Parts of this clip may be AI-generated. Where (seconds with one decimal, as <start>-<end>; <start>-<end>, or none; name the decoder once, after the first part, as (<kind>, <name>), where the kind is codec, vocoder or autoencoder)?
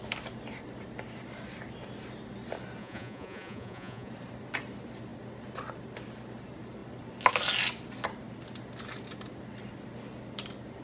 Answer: 2.8-4.1 (vocoder, Vocos)